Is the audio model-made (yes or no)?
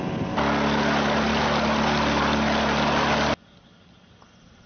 no